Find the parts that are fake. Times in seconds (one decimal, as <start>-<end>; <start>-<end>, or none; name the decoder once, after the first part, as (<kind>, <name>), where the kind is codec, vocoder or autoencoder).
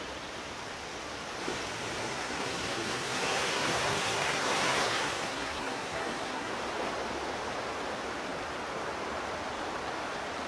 2.0-6.5 (codec, SNAC)